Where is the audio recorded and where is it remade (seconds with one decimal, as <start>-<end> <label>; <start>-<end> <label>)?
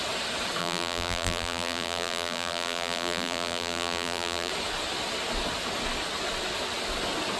0.0-0.6 recorded; 0.6-4.5 remade; 4.5-7.4 recorded